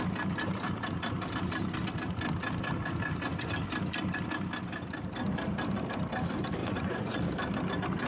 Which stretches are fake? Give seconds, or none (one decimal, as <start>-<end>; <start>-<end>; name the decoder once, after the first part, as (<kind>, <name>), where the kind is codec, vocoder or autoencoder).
6.6-7.2 (vocoder, Vocos)

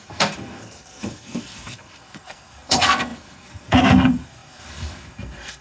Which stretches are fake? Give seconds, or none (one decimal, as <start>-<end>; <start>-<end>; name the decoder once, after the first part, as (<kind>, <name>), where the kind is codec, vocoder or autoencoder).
0.0-5.6 (codec, SNAC)

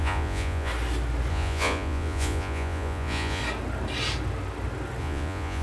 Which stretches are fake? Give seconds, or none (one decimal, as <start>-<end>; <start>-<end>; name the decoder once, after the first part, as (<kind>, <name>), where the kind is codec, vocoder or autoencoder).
0.0-0.7 (vocoder, Vocos); 1.3-3.4; 5.0-5.6

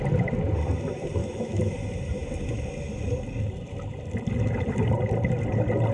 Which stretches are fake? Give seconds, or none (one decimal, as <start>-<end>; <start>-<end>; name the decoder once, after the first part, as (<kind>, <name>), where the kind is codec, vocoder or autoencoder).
1.2-1.7 (autoencoder, DAC-VAE)